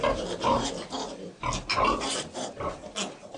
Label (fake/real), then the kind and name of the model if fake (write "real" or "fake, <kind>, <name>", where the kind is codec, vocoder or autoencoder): real